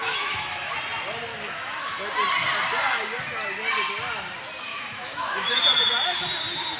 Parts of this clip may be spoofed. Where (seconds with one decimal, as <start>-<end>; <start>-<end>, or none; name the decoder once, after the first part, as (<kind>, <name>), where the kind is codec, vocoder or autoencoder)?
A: 0.0-0.7 (autoencoder, DAC-VAE); 1.3-2.0; 4.7-5.6